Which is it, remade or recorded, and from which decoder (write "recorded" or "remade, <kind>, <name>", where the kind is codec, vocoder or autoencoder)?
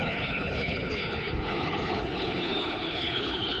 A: remade, codec, HILCodec